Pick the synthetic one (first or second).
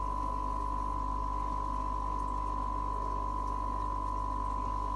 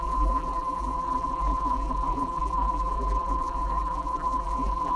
second